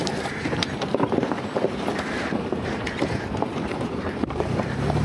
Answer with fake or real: fake